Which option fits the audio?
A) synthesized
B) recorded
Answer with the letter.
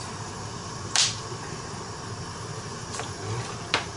B